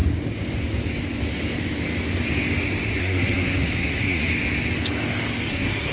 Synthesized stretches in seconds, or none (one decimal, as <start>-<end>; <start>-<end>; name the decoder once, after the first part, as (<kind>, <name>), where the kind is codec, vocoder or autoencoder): 3.0-4.3 (codec, SNAC); 5.5-5.9